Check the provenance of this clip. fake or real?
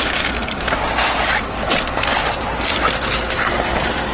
real